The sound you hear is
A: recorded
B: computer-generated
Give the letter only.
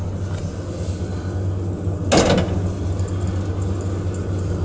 A